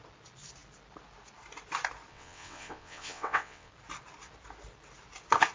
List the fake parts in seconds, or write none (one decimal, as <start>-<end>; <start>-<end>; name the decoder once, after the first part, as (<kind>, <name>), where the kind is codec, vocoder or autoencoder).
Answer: 2.1-3.7 (vocoder, WaveNeXt)